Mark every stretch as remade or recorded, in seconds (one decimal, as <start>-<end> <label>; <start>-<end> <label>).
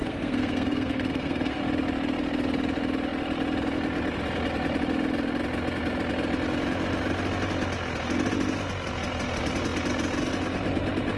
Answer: 0.0-1.6 remade; 1.6-11.2 recorded